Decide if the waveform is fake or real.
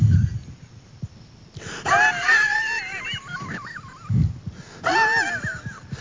real